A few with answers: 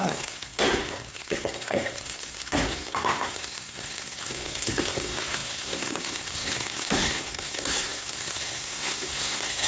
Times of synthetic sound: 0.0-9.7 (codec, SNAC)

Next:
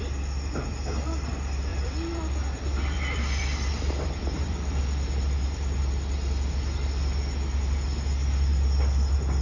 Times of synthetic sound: 1.7-4.8 (vocoder, BigVGAN v2)

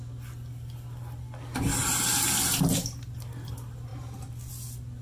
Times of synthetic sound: none

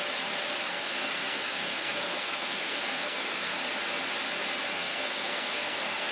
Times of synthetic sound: 0.7-3.5 (codec, SNAC); 4.7-6.1

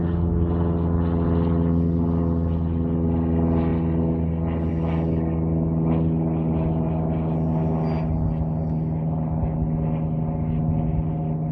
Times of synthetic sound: none

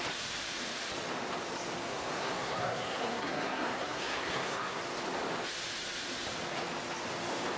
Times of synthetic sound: 1.9-4.8 (codec, SNAC)